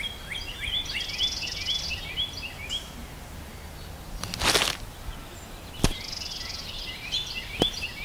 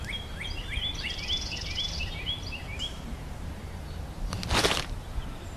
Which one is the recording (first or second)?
first